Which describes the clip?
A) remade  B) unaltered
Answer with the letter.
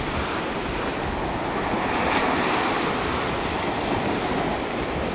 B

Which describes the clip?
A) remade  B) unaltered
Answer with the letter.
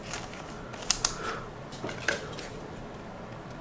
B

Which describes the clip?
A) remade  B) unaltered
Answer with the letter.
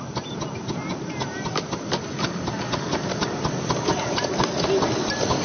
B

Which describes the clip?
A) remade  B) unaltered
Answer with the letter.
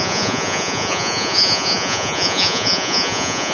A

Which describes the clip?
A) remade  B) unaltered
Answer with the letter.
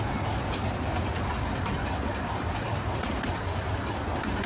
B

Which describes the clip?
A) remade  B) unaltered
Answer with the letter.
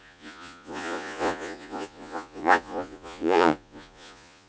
A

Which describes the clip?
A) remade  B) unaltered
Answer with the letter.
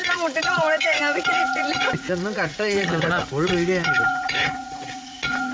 A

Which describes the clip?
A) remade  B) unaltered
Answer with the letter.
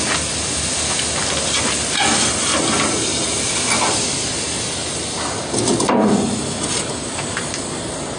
B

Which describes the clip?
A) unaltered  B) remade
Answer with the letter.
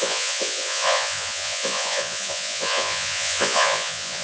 B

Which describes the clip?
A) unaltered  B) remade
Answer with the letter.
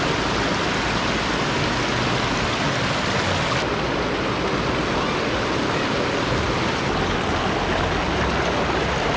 A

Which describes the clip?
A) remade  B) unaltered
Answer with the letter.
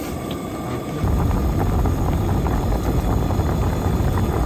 B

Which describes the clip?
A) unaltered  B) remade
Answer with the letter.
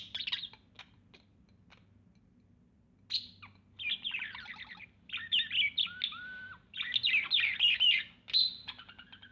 A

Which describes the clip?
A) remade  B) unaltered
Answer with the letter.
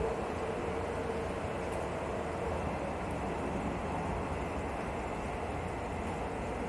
B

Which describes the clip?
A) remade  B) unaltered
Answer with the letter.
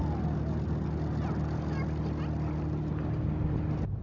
B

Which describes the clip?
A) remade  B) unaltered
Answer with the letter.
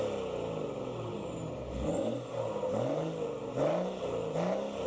B